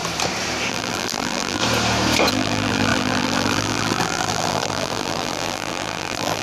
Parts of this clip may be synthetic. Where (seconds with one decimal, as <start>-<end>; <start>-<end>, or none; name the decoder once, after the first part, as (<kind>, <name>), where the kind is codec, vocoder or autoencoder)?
0.7-1.6 (vocoder, BigVGAN v2); 2.3-6.4